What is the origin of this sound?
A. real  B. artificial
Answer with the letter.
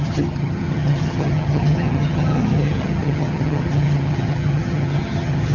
B